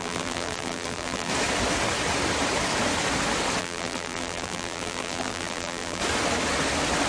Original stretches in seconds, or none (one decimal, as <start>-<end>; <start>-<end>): 1.3-3.6; 6.0-7.1